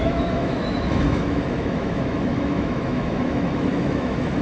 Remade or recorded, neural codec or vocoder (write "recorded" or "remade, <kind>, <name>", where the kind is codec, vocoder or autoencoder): remade, autoencoder, DAC-VAE